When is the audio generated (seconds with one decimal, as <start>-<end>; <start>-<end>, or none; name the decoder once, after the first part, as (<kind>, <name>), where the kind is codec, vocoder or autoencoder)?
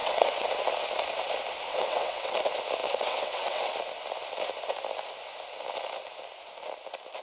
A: 0.0-0.5 (vocoder, WaveNeXt); 1.7-2.4; 2.8-3.7